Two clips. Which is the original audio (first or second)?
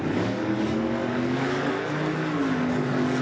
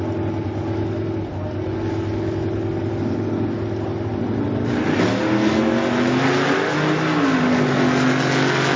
second